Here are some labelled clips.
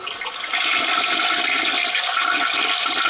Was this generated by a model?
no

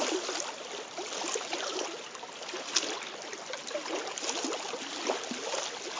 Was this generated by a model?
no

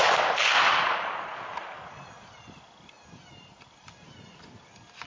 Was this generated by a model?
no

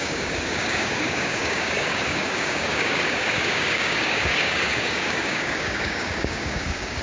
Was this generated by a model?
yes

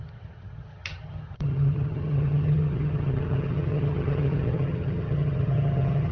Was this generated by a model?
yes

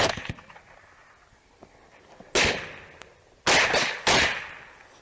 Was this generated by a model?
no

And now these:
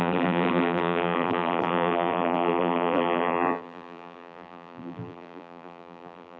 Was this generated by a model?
yes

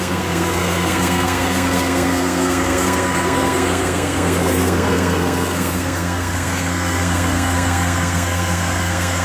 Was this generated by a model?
yes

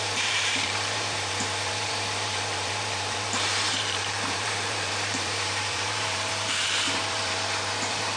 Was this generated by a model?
yes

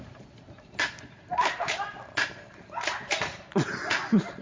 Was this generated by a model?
yes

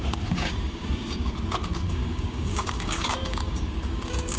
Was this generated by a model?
yes